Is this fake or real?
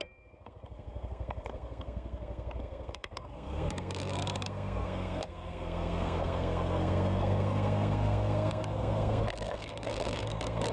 fake